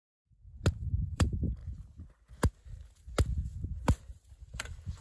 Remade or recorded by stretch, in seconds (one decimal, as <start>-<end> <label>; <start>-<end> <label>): 0.0-1.1 recorded; 1.1-1.6 remade; 1.6-4.4 recorded; 4.4-5.0 remade